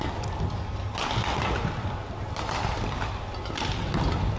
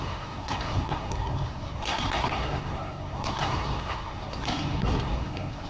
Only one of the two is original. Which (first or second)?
first